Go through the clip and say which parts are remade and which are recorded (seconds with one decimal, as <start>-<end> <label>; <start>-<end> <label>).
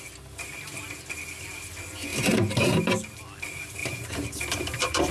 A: 0.0-2.1 recorded; 2.1-2.9 remade; 2.9-3.8 recorded; 3.8-5.1 remade